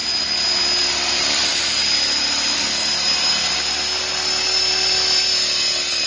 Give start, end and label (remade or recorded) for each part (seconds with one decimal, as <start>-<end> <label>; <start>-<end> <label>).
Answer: 0.0-6.1 recorded